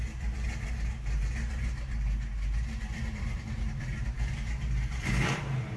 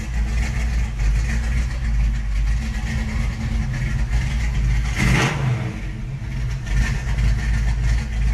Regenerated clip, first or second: first